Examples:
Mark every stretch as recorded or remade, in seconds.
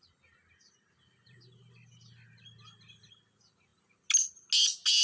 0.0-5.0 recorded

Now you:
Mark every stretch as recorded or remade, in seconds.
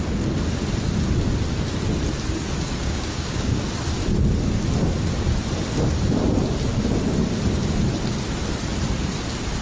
0.0-2.8 recorded; 2.8-3.6 remade; 3.6-9.6 recorded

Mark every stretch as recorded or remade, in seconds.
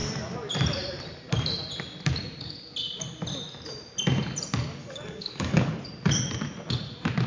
0.0-4.8 recorded; 4.8-5.7 remade; 5.7-7.3 recorded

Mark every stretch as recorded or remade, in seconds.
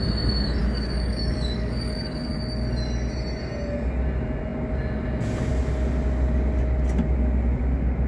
0.0-0.6 recorded; 0.6-2.3 remade; 2.3-8.1 recorded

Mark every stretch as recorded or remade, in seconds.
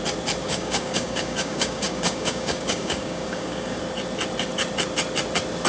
0.0-0.4 recorded; 0.4-3.8 remade; 3.8-5.7 recorded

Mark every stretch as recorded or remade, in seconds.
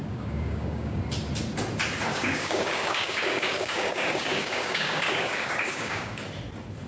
0.0-1.0 remade; 1.0-2.1 recorded; 2.1-6.2 remade; 6.2-6.9 recorded